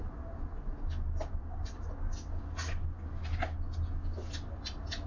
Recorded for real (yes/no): yes